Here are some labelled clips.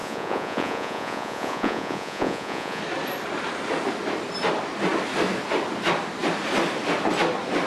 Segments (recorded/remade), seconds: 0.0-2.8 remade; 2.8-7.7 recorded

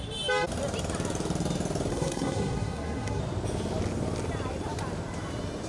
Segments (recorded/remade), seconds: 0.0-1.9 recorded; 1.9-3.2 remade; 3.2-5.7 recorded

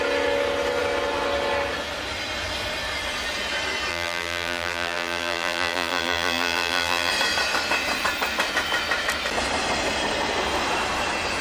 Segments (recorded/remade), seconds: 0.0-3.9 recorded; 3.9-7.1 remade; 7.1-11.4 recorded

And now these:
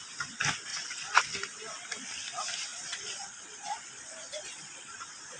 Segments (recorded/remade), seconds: 0.0-0.7 recorded; 0.7-1.2 remade; 1.2-2.7 recorded; 2.7-5.4 remade

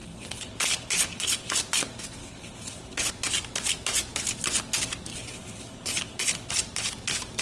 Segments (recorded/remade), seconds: 0.0-1.5 remade; 1.5-2.2 recorded; 2.2-3.1 remade; 3.1-5.1 recorded; 5.1-6.5 remade; 6.5-7.4 recorded

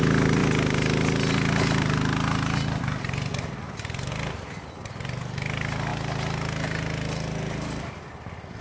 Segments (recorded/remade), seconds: 0.0-8.6 recorded